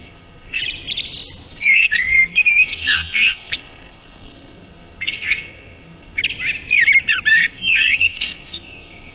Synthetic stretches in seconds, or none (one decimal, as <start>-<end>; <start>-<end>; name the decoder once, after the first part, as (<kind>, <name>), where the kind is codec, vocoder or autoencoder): 0.0-0.6 (codec, SNAC); 1.5-6.2; 7.3-9.1